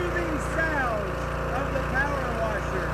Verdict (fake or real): real